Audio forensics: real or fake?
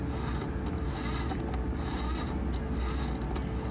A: real